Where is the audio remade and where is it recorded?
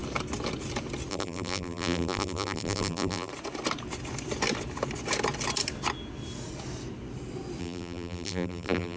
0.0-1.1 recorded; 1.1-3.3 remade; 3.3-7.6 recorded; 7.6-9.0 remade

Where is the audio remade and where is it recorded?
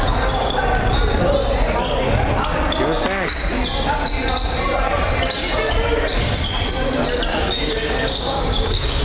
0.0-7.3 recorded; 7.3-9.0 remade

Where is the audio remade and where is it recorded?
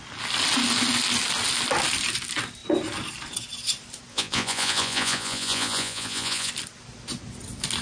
0.0-4.1 recorded; 4.1-6.5 remade; 6.5-7.8 recorded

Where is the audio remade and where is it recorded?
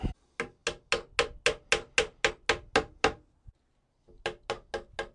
0.0-5.1 recorded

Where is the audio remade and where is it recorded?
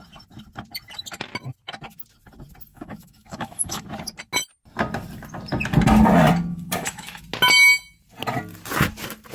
0.0-2.7 recorded; 2.7-3.8 remade; 3.8-6.5 recorded; 6.5-7.2 remade; 7.2-9.3 recorded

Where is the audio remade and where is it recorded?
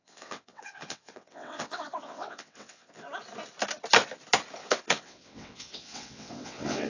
0.0-3.0 remade; 3.0-4.6 recorded; 4.6-6.9 remade